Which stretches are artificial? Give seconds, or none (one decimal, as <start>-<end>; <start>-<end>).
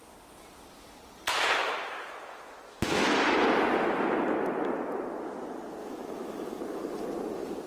1.6-3.4; 5.8-6.6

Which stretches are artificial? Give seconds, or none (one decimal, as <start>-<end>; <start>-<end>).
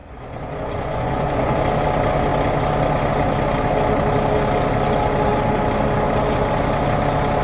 0.0-1.6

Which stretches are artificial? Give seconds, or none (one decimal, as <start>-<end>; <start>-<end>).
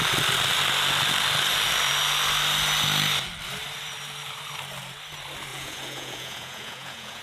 5.5-7.2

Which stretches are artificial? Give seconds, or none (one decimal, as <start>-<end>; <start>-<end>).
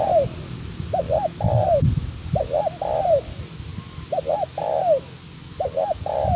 none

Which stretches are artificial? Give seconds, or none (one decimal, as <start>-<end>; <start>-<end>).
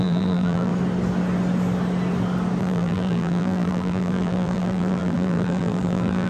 0.0-0.7; 2.6-6.3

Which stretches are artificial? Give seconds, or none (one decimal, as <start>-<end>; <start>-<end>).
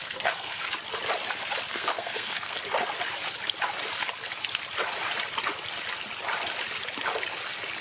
0.0-0.6; 1.7-2.6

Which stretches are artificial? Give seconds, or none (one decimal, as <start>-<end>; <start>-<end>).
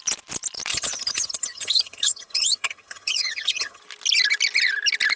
0.7-3.8